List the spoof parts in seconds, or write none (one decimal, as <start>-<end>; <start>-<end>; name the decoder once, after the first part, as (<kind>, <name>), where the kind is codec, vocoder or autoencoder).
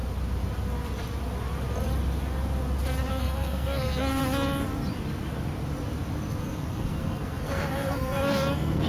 3.1-4.2 (codec, SNAC); 6.4-8.9